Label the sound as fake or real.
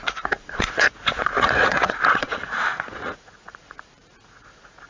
fake